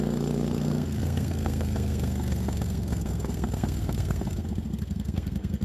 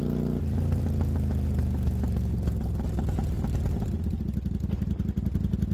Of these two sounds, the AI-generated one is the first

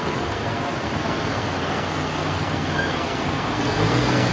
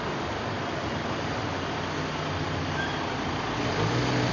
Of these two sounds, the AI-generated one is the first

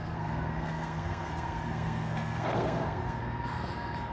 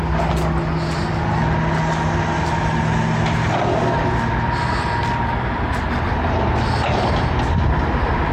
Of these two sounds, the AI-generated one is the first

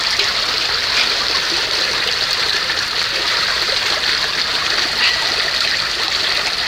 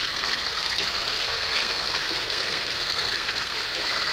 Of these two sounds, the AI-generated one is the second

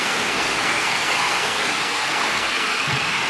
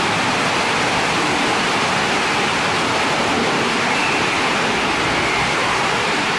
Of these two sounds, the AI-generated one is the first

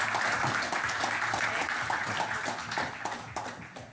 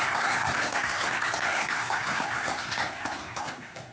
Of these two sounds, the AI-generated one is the second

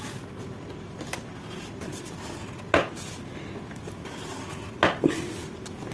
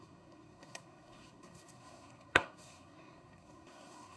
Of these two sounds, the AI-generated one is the second